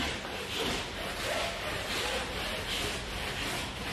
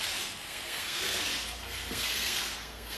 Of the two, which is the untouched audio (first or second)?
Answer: first